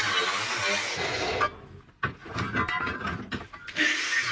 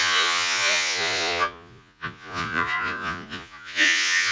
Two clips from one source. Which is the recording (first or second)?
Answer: first